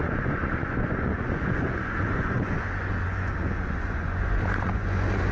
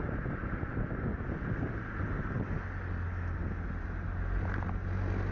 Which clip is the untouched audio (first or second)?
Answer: second